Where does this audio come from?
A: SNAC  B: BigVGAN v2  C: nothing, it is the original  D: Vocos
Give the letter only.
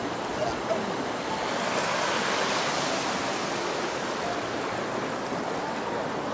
C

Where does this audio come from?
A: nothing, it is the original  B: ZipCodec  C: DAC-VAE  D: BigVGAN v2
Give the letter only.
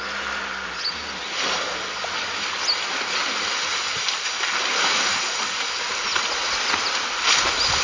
A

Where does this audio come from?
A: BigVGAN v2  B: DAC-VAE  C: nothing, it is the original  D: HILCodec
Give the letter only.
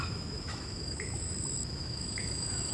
B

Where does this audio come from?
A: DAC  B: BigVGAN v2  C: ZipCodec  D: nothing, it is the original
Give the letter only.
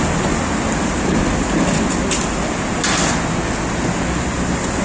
D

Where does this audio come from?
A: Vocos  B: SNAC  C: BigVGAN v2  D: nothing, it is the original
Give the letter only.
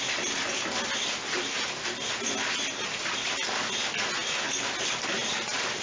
D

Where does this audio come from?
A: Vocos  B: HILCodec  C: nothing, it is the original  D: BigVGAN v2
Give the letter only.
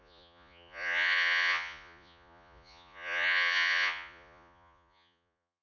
A